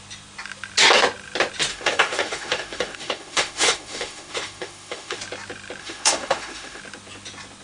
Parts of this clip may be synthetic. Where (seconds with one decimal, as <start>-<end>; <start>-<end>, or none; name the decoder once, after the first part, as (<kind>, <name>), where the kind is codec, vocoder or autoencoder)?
1.7-5.2 (autoencoder, DAC-VAE); 5.8-6.8